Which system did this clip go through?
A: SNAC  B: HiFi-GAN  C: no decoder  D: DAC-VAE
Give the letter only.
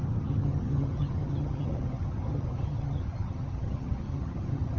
B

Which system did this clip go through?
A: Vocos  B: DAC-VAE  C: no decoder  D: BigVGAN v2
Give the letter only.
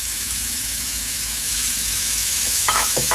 B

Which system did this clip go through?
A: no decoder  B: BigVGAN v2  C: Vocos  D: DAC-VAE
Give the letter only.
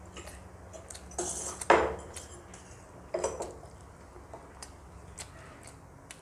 A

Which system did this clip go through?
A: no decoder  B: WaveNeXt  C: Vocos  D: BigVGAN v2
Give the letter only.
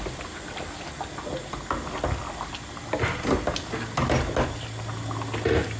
A